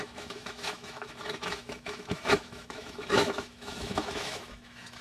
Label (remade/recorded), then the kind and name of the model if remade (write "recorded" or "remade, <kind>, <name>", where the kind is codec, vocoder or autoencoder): remade, autoencoder, DAC-VAE